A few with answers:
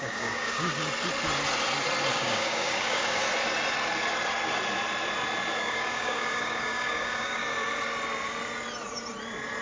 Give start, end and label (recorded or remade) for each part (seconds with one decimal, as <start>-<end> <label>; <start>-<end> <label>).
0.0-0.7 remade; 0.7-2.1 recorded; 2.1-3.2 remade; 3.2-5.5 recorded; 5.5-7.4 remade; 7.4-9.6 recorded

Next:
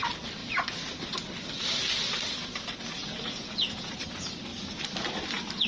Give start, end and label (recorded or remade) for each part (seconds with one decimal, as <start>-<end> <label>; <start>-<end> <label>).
0.0-3.0 recorded; 3.0-3.9 remade; 3.9-5.7 recorded

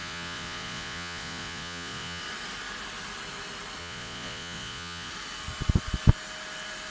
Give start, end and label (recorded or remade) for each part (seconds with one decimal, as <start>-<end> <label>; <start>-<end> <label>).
0.0-2.2 remade; 2.2-3.8 recorded; 3.8-5.1 remade; 5.1-6.9 recorded

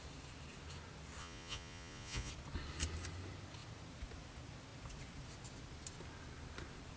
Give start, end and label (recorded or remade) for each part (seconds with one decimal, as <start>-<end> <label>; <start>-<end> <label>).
0.0-1.2 recorded; 1.2-2.3 remade; 2.3-7.0 recorded